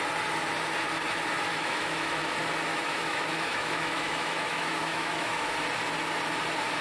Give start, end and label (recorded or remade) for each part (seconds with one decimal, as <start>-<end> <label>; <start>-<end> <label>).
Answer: 0.0-1.5 recorded; 1.5-2.2 remade; 2.2-2.7 recorded; 2.7-5.5 remade; 5.5-6.8 recorded